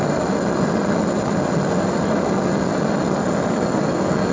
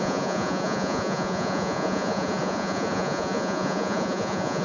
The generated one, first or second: second